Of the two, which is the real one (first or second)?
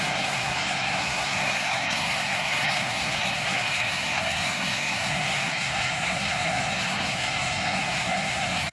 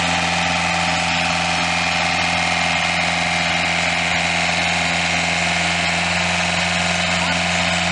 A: second